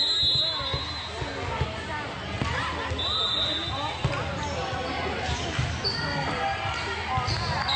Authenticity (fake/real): real